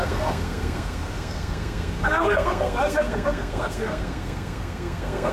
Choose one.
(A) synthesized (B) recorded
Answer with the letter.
A